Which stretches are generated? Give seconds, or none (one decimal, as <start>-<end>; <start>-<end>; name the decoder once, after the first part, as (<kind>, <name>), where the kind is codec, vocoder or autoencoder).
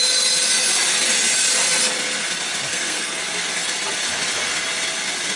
2.7-3.2 (codec, SNAC)